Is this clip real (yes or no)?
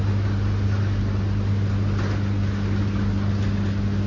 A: yes